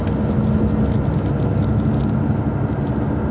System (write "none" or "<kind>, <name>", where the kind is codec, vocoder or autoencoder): none